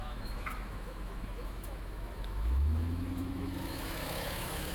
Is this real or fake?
fake